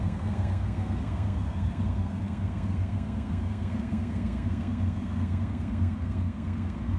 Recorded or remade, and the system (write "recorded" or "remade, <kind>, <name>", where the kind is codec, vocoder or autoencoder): remade, codec, SNAC